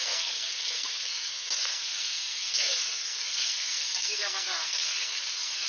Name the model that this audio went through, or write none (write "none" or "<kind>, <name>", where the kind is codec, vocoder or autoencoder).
codec, SNAC